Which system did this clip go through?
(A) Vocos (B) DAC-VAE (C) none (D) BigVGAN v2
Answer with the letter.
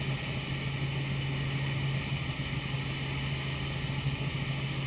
C